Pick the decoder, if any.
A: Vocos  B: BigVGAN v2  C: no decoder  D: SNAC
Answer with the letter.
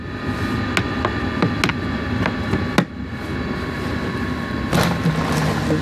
C